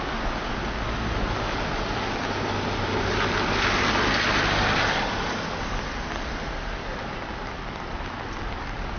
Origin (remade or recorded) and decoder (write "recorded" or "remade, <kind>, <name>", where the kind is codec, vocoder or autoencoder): recorded